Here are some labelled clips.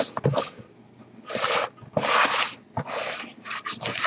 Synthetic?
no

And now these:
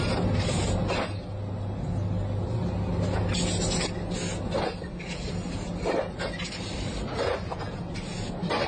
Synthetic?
no